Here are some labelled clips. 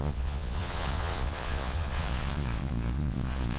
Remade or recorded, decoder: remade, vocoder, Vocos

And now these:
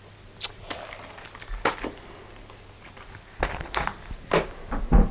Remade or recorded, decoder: recorded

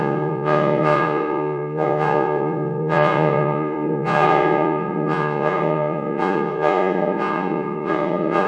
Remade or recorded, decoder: remade, vocoder, Vocos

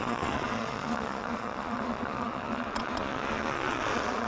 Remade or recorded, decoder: remade, vocoder, Vocos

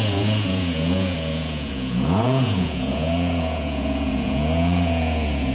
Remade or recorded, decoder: remade, vocoder, Vocos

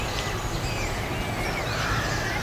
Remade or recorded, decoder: recorded